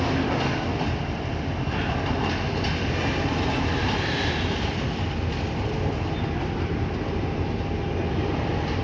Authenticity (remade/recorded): recorded